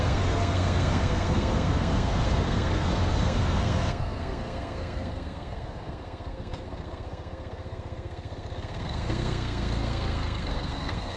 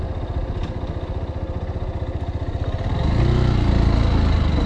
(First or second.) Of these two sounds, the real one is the second